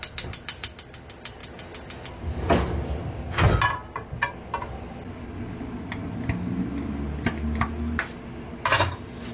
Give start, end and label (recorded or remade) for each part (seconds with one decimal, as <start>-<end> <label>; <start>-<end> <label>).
0.0-1.4 recorded; 1.4-2.1 remade; 2.1-9.3 recorded